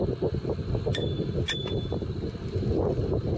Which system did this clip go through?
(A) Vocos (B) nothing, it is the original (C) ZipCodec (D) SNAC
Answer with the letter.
B